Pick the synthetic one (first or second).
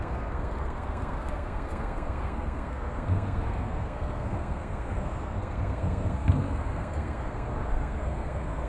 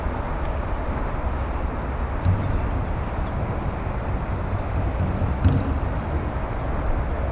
first